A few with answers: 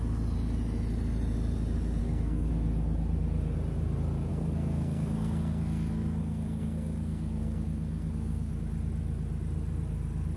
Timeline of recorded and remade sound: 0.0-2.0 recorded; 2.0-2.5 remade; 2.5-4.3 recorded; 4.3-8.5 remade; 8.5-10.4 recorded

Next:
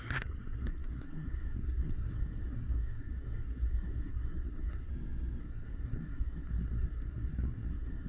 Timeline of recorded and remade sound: 0.0-4.9 remade; 4.9-5.4 recorded; 5.4-8.1 remade

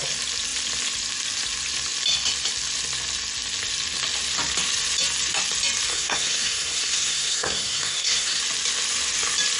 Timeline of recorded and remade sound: 0.0-5.9 recorded; 5.9-8.4 remade; 8.4-9.6 recorded

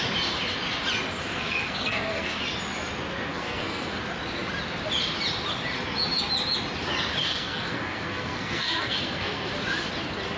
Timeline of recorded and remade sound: 0.0-1.2 recorded; 1.2-2.4 remade; 2.4-3.3 recorded; 3.3-4.0 remade; 4.0-7.2 recorded; 7.2-9.5 remade; 9.5-10.4 recorded

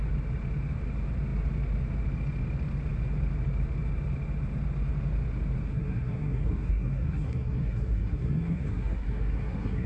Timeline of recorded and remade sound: 0.0-5.7 recorded; 5.7-9.9 remade

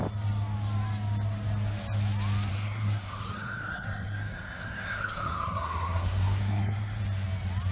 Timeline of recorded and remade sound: 0.0-2.5 recorded; 2.5-7.0 remade; 7.0-7.7 recorded

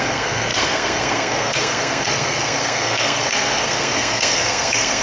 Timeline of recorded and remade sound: 0.0-5.0 remade